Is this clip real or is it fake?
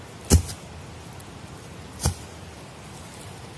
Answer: real